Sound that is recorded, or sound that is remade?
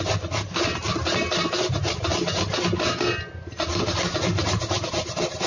recorded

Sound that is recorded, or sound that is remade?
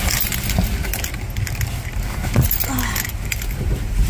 recorded